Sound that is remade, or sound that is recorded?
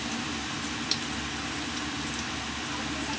recorded